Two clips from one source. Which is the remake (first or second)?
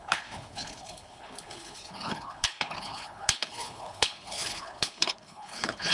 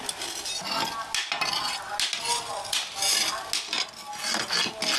first